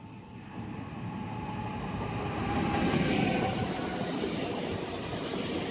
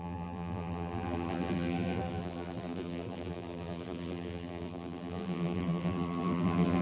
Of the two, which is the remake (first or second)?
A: second